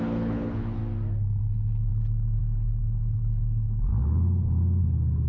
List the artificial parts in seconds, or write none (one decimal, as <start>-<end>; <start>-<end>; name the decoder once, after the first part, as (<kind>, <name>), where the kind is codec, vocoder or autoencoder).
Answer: 0.0-0.8 (codec, HILCodec); 1.4-1.9; 2.4-3.9; 4.8-5.3